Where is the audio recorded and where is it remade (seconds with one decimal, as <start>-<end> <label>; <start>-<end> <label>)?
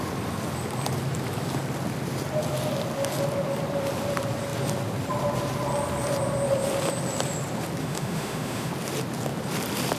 0.0-7.8 recorded; 7.8-8.7 remade; 8.7-10.0 recorded